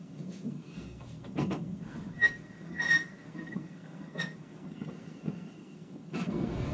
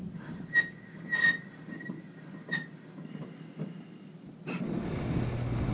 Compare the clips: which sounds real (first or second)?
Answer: second